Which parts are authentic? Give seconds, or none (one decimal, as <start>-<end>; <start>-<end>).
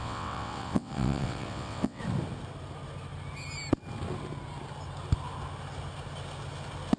2.0-7.0